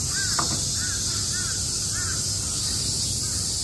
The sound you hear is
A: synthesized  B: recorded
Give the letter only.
B